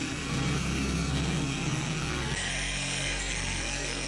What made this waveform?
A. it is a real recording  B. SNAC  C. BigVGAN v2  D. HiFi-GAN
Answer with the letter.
B